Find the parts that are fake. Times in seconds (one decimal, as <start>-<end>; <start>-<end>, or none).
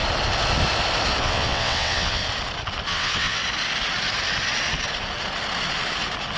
1.2-2.2; 2.9-3.4